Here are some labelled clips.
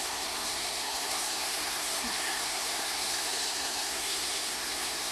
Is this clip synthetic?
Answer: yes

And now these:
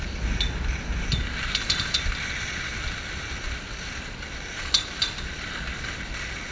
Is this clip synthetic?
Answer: no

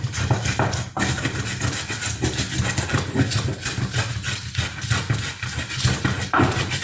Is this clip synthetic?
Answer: no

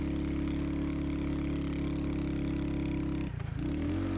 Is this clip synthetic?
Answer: no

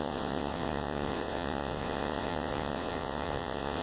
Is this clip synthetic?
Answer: yes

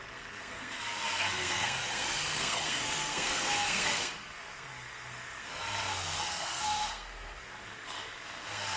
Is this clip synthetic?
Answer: yes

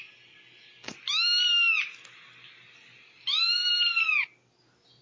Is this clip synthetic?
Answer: no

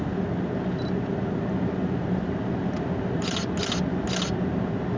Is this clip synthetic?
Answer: no